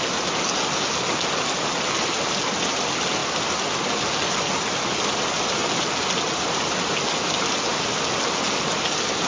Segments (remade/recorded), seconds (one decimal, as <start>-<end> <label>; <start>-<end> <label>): 0.0-9.3 recorded